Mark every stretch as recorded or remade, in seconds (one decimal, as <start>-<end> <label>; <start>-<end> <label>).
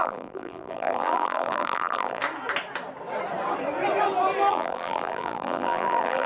0.0-2.2 remade; 2.2-4.5 recorded; 4.5-6.3 remade